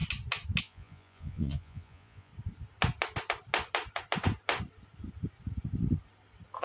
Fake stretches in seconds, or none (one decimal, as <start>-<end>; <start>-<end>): 0.6-2.3